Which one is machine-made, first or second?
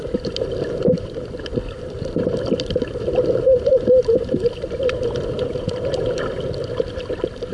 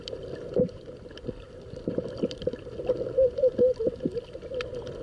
first